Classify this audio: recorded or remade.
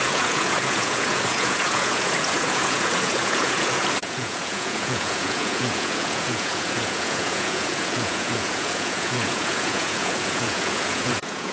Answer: remade